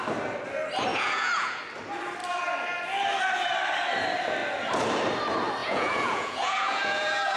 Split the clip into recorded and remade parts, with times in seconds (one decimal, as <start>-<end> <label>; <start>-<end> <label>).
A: 0.0-0.9 recorded; 0.9-1.6 remade; 1.6-5.6 recorded; 5.6-7.4 remade